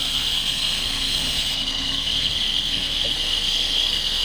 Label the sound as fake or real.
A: fake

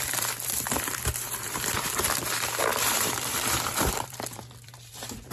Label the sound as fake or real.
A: fake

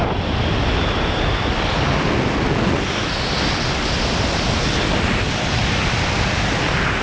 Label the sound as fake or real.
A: real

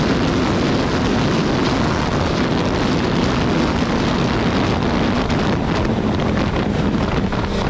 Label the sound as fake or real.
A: real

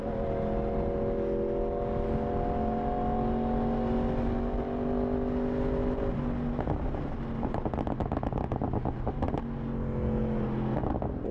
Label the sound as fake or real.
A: real